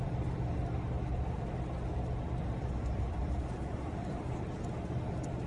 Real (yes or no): no